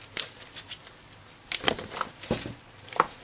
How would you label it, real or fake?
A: real